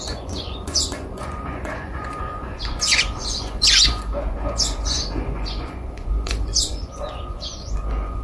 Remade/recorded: remade